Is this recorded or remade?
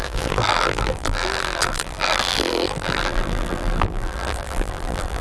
remade